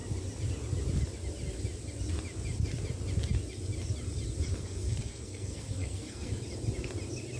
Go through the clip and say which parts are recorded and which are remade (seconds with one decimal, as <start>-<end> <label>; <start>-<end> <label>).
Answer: 0.0-4.5 recorded; 4.5-6.3 remade; 6.3-7.4 recorded